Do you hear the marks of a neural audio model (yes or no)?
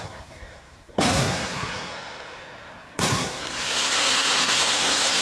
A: yes